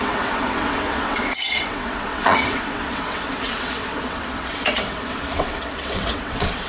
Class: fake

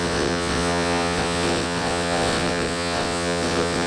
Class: fake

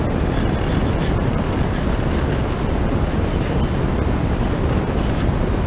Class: real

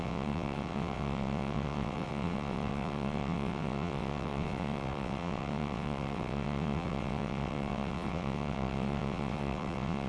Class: fake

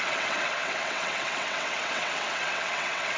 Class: fake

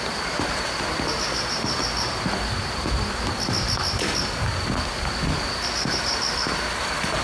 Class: real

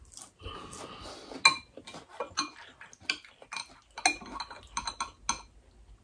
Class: real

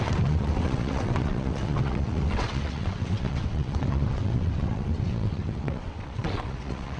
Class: fake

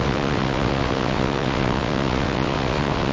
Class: fake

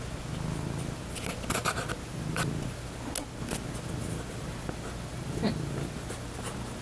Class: real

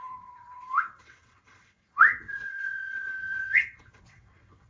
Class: fake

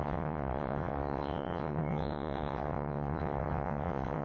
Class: fake